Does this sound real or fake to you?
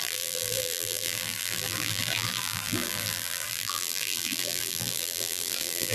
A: fake